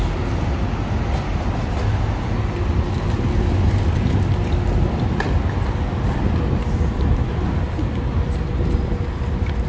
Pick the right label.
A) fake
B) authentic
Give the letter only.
B